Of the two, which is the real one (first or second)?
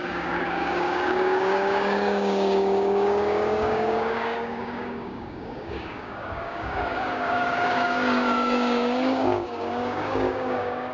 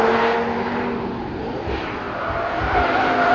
second